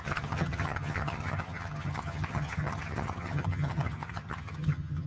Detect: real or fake fake